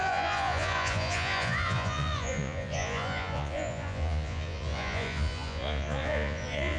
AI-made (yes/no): yes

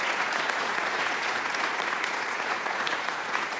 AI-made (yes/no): yes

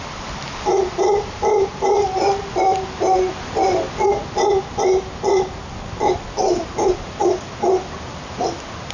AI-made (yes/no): no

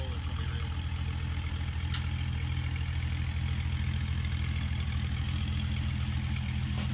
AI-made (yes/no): no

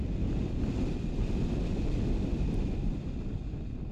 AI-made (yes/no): no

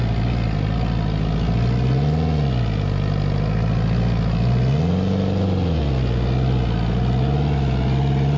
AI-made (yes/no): no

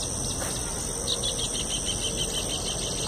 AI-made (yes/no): no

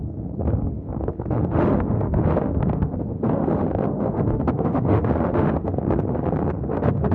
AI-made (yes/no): yes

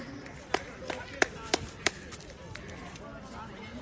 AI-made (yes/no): yes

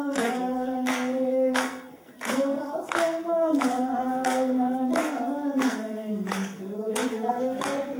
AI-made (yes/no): yes